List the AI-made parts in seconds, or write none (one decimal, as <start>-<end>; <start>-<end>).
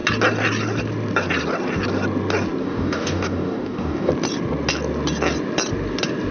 2.6-4.1